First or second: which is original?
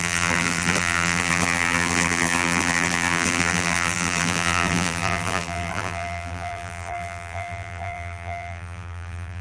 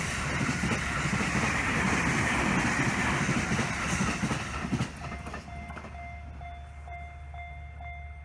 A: second